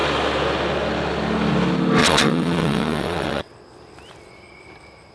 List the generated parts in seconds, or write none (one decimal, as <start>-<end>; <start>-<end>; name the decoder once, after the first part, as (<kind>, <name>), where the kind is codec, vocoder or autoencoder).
2.0-3.5 (vocoder, WaveNeXt)